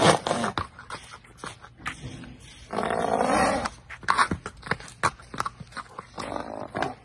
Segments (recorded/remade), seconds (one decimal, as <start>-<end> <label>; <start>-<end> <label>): 0.0-7.0 recorded